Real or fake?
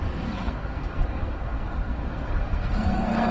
fake